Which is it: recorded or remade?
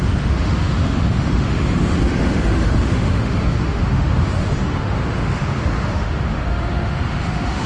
remade